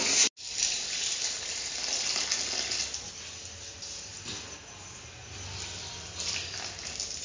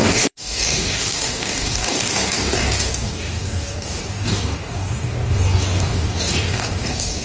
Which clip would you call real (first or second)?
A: first